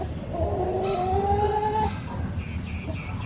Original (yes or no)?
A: yes